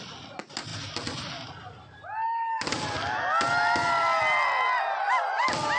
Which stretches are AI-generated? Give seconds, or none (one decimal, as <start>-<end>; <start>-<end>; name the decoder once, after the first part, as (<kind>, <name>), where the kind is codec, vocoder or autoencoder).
none